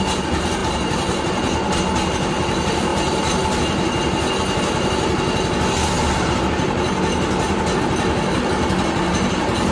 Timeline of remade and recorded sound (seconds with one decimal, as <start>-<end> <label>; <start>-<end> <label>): 0.0-0.6 recorded; 0.6-1.8 remade; 1.8-9.7 recorded